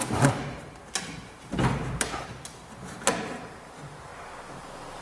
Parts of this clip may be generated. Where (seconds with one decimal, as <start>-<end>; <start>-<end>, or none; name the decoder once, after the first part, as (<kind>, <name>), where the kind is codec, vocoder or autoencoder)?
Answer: 1.0-1.8 (vocoder, BigVGAN v2); 3.1-4.1